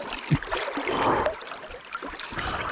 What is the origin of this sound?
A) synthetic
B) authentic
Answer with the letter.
A